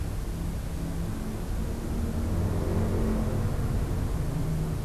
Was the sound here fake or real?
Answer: real